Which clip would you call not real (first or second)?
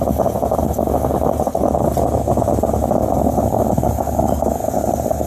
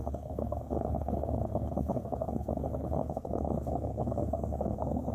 second